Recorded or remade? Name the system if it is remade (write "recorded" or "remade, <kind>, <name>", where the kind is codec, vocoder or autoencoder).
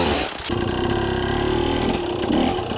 recorded